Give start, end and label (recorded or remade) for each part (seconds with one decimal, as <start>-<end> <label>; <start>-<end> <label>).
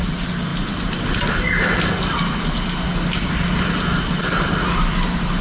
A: 0.0-5.4 recorded